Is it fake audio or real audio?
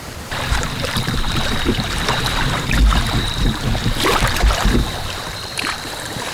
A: fake